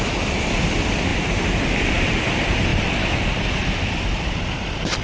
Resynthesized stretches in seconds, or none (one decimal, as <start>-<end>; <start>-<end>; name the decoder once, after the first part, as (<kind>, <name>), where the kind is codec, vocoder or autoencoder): 0.0-1.1 (vocoder, BigVGAN v2); 2.1-5.0